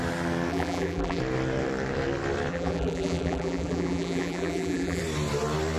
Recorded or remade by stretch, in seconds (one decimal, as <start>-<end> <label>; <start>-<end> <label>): 0.0-0.5 recorded; 0.5-1.2 remade; 1.2-2.5 recorded; 2.5-5.0 remade; 5.0-5.8 recorded